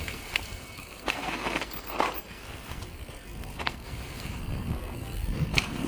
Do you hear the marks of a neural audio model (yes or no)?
yes